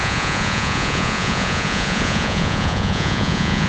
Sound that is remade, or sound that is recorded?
remade